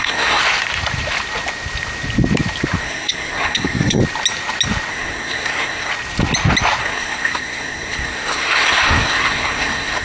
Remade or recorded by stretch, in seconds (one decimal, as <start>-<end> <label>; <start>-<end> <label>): 0.0-0.4 remade; 0.4-2.8 recorded; 2.8-4.0 remade; 4.0-4.9 recorded; 4.9-5.9 remade; 5.9-6.8 recorded; 6.8-10.0 remade